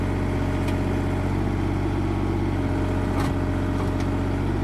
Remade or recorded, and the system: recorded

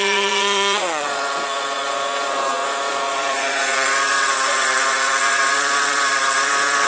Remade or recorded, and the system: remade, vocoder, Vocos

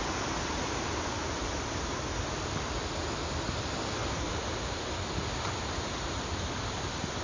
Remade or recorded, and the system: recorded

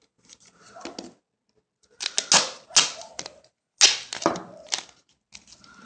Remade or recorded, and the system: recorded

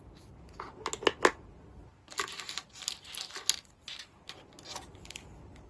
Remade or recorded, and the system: recorded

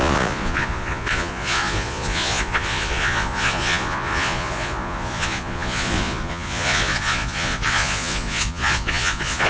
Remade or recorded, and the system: remade, vocoder, Vocos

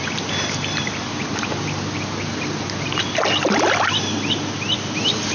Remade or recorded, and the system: recorded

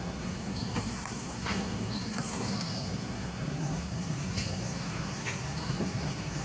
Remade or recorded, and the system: remade, codec, SNAC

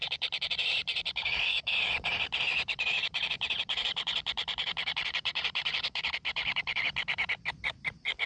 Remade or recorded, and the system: remade, vocoder, BigVGAN v2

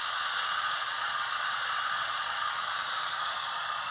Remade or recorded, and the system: remade, vocoder, Vocos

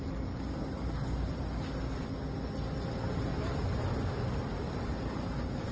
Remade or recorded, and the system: recorded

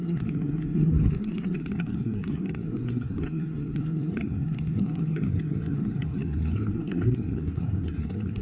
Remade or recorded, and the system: remade, codec, SNAC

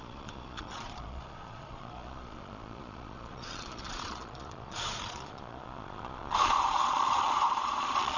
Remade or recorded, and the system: remade, vocoder, Vocos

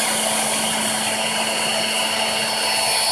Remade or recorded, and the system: recorded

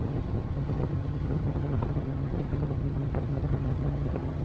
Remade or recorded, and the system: remade, vocoder, HiFi-GAN